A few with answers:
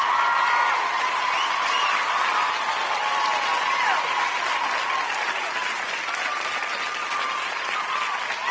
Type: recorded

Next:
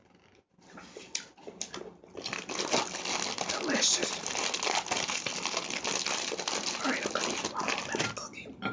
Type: recorded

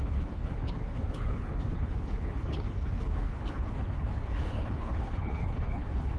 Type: remade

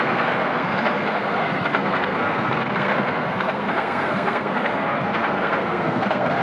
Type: remade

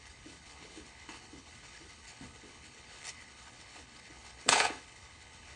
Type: remade